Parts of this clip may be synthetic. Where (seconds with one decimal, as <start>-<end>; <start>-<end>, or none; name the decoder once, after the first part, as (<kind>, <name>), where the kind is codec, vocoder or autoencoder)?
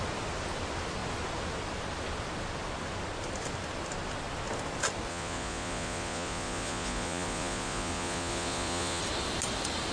5.1-9.0 (vocoder, Vocos)